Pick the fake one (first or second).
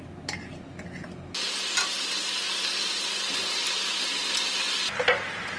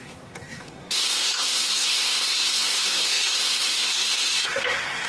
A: second